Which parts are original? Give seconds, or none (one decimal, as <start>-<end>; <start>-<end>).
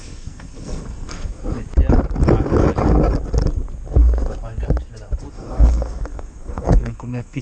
1.4-5.3